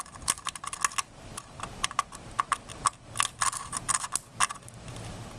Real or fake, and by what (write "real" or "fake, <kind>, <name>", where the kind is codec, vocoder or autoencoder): real